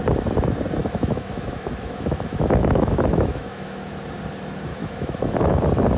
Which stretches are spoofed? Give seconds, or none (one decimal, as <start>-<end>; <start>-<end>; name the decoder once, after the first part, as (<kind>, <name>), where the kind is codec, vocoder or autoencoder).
0.8-3.9 (autoencoder, DAC-VAE); 4.7-5.6